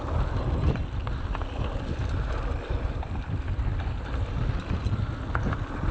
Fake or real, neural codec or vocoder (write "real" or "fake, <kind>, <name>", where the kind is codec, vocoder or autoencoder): real